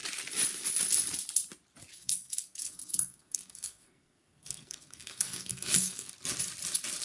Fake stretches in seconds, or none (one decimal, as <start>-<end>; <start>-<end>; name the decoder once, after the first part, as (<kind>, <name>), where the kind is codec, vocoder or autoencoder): 1.9-6.1 (codec, SNAC)

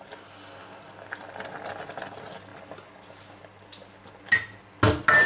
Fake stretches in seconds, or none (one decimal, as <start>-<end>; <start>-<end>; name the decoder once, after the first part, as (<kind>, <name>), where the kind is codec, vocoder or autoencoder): none

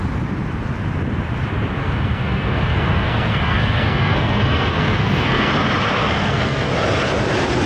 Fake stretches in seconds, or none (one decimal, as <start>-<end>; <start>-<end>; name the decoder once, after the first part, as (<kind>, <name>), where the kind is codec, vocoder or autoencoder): 1.8-5.5 (codec, SNAC); 6.0-6.7